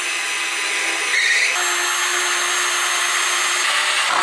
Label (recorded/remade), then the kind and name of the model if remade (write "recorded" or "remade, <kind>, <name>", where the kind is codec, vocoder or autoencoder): recorded